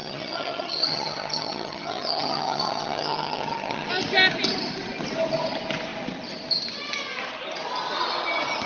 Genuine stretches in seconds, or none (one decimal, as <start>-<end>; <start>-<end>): 3.9-8.7